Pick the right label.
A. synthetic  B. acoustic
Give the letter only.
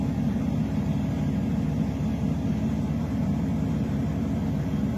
B